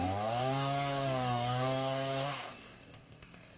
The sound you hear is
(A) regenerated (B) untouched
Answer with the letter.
A